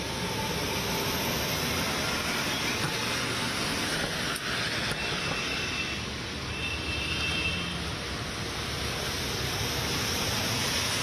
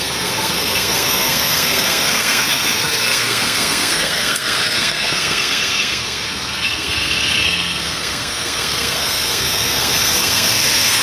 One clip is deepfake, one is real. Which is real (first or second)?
first